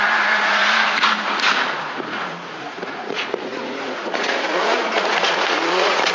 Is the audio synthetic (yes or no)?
yes